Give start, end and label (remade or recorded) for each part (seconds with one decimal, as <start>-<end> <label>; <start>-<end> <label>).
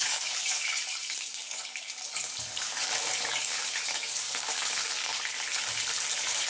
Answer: 0.0-5.1 remade; 5.1-6.1 recorded; 6.1-6.5 remade